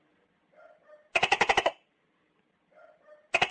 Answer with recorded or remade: recorded